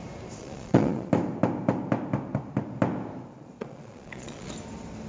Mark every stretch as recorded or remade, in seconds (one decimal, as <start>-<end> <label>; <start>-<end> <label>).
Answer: 0.0-0.4 recorded; 0.4-1.1 remade; 1.1-3.3 recorded; 3.3-4.5 remade; 4.5-5.1 recorded